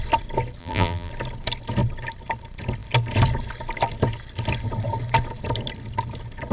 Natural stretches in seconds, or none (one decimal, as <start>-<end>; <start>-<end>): 0.0-0.6; 1.1-6.5